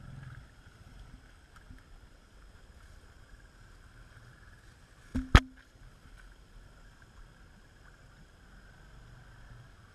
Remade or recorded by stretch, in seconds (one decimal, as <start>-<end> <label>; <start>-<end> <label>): 0.0-9.9 recorded